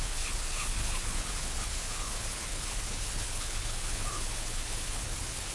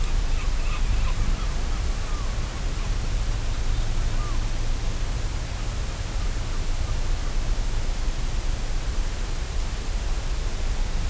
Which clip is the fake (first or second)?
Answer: first